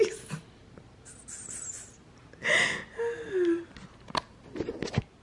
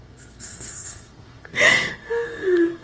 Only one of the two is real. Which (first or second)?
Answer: first